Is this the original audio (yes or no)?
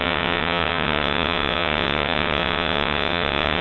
no